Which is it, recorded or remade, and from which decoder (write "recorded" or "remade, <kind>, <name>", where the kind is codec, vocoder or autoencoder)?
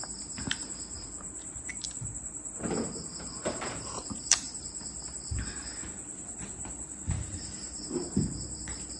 remade, vocoder, BigVGAN v2